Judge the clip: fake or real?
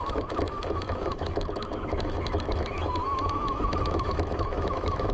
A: fake